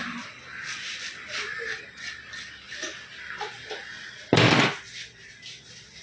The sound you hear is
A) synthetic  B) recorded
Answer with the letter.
B